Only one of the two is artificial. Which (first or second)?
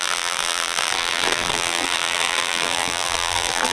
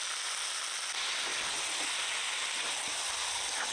first